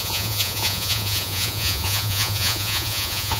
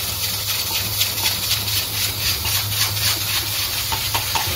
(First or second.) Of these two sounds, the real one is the second